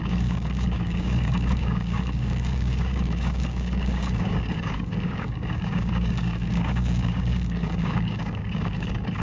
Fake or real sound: fake